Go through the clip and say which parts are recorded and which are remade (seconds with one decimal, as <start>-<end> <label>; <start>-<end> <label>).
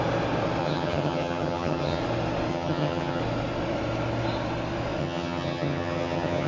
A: 0.0-0.6 recorded; 0.6-2.0 remade; 2.0-2.5 recorded; 2.5-3.2 remade; 3.2-5.0 recorded; 5.0-6.5 remade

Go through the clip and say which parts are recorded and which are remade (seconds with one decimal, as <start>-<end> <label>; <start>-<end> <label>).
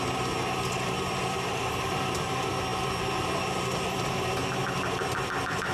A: 0.0-5.7 remade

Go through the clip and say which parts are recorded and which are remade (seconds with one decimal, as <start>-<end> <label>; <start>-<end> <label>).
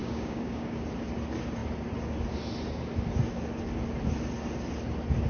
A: 0.0-0.8 remade; 0.8-5.3 recorded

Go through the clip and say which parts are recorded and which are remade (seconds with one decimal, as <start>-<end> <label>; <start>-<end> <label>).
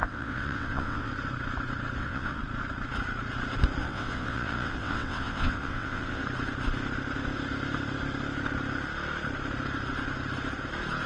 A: 0.0-1.1 remade; 1.1-2.0 recorded; 2.0-2.4 remade; 2.4-3.8 recorded; 3.8-6.2 remade; 6.2-11.1 recorded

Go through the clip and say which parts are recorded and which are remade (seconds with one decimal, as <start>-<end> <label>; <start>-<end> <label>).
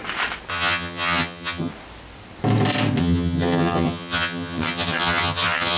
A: 0.0-0.5 recorded; 0.5-1.7 remade; 1.7-3.0 recorded; 3.0-5.8 remade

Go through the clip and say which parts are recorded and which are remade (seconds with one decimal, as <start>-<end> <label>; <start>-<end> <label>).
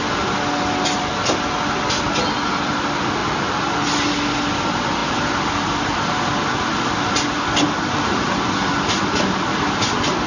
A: 0.0-10.3 recorded